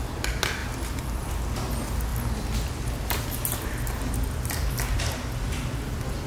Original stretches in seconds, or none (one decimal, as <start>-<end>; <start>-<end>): 0.0-0.6; 1.3-6.3